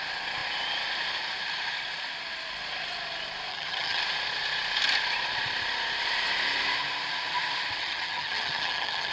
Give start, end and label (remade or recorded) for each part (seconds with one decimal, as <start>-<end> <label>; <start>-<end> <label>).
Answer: 0.0-3.5 recorded; 3.5-4.0 remade; 4.0-7.8 recorded; 7.8-9.1 remade